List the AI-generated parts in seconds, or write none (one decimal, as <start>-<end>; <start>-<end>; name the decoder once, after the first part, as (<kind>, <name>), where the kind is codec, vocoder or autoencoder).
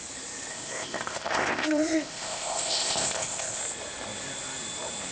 0.5-3.6 (codec, ZipCodec)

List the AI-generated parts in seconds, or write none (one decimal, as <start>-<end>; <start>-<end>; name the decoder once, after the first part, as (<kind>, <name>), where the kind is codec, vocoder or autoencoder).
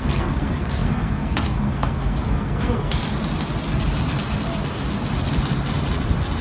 0.0-3.0 (codec, SNAC)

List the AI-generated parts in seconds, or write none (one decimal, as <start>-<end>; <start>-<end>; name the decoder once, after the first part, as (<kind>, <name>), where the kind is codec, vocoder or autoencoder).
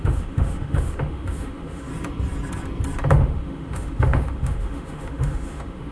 0.0-1.9 (autoencoder, DAC-VAE); 3.1-5.9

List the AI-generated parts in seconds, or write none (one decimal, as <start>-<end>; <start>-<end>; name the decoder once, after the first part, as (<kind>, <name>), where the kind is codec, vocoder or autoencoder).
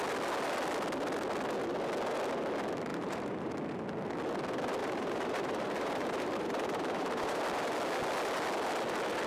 2.9-3.5 (vocoder, BigVGAN v2); 4.8-7.4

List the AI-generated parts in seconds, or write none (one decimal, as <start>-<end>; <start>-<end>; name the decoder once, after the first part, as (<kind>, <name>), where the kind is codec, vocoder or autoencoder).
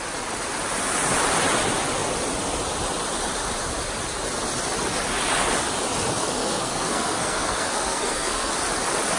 6.2-8.5 (codec, SNAC)